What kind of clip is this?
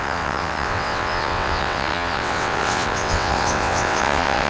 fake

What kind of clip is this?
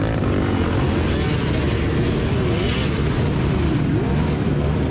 real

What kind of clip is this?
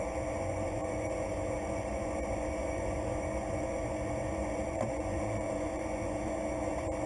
fake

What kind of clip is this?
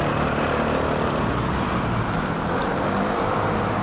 real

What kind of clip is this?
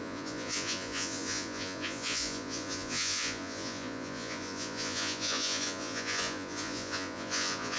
fake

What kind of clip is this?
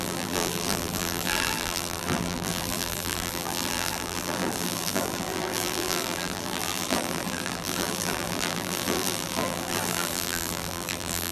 fake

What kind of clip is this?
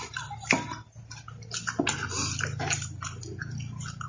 real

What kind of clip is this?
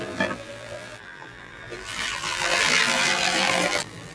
fake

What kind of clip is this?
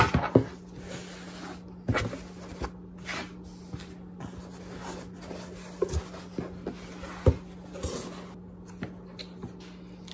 real